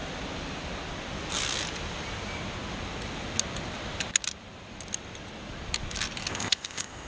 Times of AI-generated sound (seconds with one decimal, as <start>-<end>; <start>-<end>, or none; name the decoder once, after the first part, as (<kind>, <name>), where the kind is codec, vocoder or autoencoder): 6.3-7.1 (codec, ZipCodec)